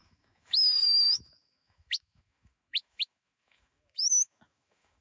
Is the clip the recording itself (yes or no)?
no